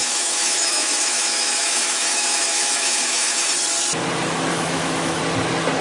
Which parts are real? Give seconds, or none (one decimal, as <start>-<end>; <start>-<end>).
3.5-4.5; 5.2-5.8